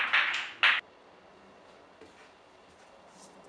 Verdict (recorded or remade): recorded